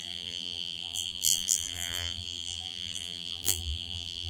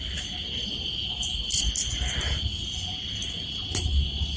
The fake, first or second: first